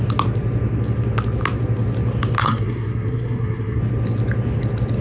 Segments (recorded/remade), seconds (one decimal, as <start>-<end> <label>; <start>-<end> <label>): 0.0-2.4 recorded; 2.4-3.8 remade; 3.8-5.0 recorded